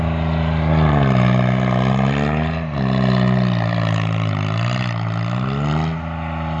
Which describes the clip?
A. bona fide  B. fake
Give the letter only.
A